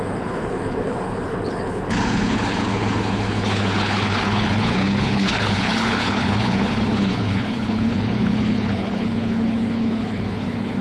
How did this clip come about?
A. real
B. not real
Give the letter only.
B